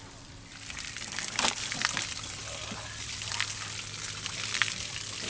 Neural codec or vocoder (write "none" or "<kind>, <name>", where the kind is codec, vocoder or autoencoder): vocoder, BigVGAN v2